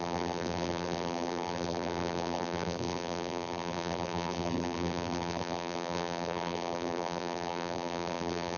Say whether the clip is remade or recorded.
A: remade